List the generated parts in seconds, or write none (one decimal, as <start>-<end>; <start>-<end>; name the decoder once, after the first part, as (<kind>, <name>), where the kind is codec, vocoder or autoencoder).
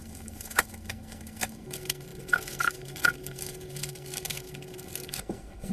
0.0-5.7 (codec, SNAC)